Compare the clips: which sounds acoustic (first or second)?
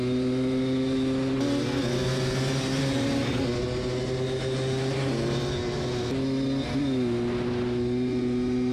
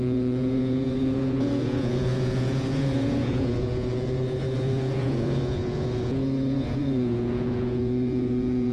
first